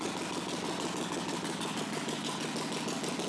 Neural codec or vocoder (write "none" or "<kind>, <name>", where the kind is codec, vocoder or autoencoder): none